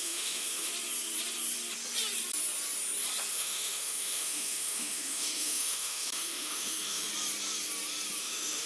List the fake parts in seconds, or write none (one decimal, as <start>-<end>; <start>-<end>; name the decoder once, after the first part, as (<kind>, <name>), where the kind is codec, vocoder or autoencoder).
0.0-0.7 (autoencoder, DAC-VAE); 3.3-7.1; 8.2-8.7